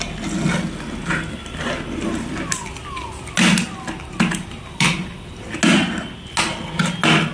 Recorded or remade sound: recorded